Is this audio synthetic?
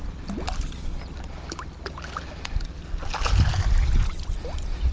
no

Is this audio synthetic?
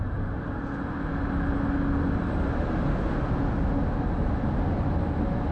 no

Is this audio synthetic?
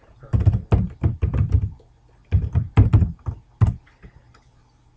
no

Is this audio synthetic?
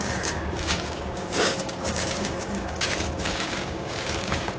yes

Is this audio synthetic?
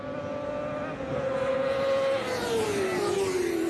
no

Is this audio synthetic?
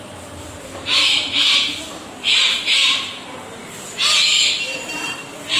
yes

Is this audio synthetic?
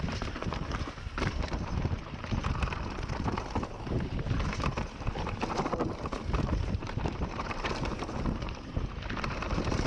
yes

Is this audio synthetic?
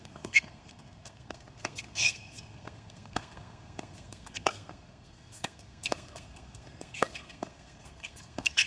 yes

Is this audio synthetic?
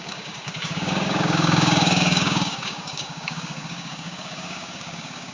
yes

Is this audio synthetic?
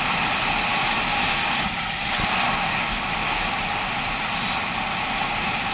no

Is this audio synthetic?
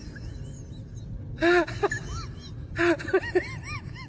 no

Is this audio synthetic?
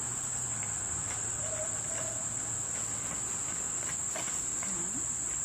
no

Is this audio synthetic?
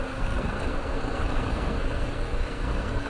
yes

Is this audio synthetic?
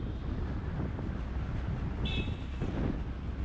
no